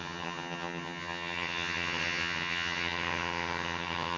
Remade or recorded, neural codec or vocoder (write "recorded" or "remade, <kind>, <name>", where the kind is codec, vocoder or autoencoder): remade, vocoder, HiFi-GAN